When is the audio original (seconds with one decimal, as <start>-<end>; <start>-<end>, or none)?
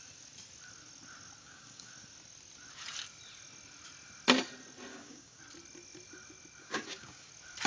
0.0-1.4; 1.9-4.9; 5.4-6.6; 7.3-7.7